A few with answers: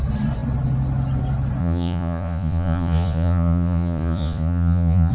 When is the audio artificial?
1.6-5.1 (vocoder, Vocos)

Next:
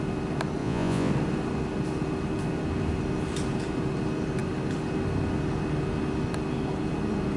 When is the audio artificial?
0.6-1.1 (vocoder, Vocos)

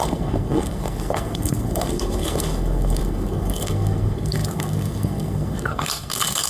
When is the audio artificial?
0.0-6.5 (codec, SNAC)

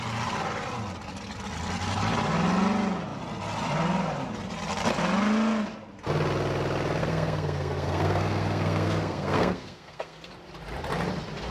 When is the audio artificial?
7.0-10.3 (codec, SNAC)